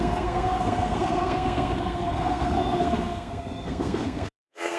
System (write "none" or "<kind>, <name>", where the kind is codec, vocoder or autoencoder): codec, SNAC